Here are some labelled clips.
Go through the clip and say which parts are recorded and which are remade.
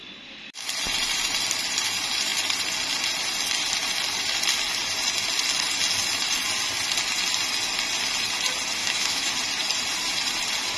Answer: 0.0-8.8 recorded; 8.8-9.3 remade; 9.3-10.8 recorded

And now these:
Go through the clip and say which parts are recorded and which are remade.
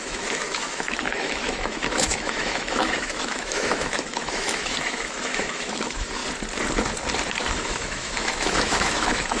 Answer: 0.0-6.2 remade; 6.2-7.5 recorded; 7.5-9.4 remade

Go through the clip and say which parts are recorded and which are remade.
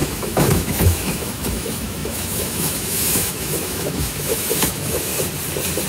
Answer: 0.0-5.1 remade; 5.1-5.9 recorded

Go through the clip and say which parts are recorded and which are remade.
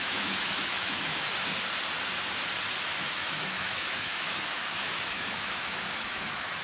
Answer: 0.0-1.3 remade; 1.3-3.0 recorded; 3.0-6.6 remade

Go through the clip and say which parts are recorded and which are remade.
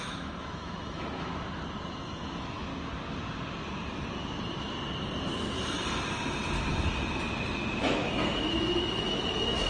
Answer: 0.0-1.3 remade; 1.3-2.0 recorded; 2.0-2.7 remade; 2.7-7.8 recorded; 7.8-9.7 remade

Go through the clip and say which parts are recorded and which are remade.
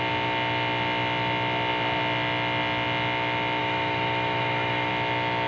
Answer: 0.0-3.6 recorded; 3.6-4.9 remade; 4.9-5.5 recorded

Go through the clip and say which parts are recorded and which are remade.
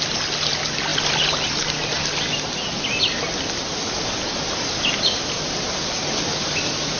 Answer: 0.0-7.0 recorded